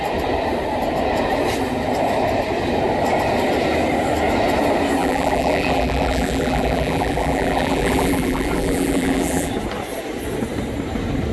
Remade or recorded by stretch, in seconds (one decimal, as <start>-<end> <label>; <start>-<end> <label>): 0.0-5.0 recorded; 5.0-9.5 remade; 9.5-11.3 recorded